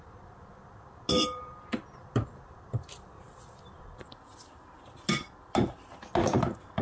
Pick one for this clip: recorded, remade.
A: recorded